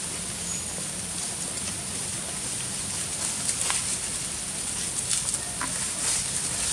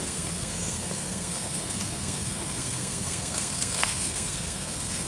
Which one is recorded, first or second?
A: first